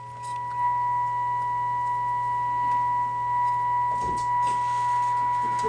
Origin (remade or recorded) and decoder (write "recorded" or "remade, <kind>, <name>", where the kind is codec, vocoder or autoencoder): recorded